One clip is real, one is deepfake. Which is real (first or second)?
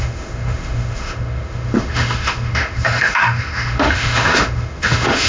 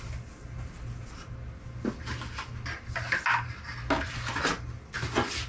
second